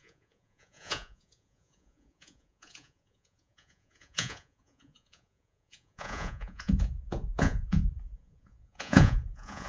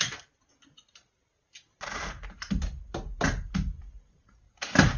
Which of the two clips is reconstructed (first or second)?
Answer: first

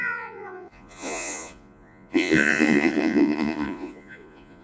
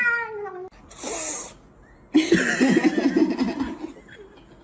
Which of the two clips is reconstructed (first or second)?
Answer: first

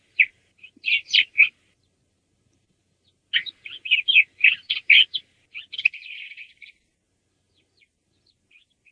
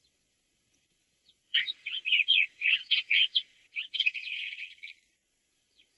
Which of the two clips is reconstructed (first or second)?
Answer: second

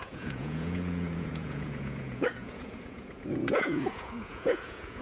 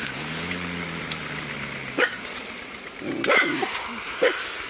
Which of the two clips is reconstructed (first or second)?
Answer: first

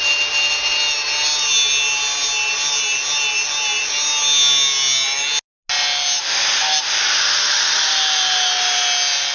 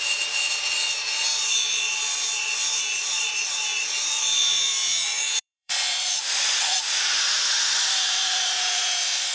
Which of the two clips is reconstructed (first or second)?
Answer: second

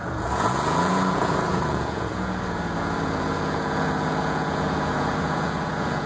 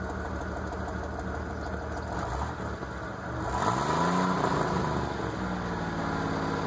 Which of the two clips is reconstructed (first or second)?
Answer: first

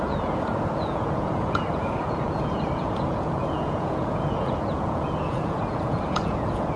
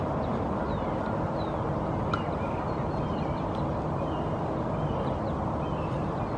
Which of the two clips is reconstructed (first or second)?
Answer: first